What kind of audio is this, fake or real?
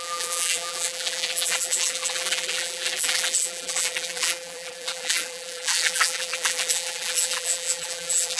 fake